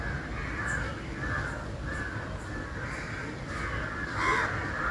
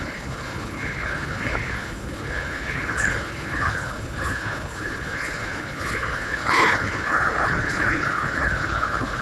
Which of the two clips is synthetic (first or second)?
second